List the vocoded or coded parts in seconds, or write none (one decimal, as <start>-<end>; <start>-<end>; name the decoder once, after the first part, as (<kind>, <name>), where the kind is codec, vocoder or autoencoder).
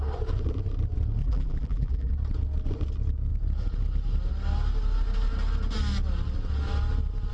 1.2-2.1 (vocoder, BigVGAN v2)